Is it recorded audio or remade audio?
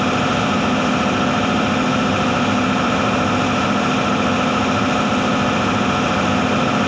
recorded